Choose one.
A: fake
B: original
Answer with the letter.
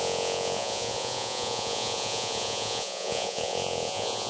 A